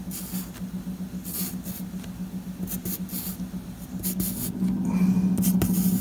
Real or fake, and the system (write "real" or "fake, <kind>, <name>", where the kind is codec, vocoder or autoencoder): real